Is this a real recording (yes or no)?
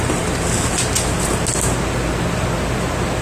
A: yes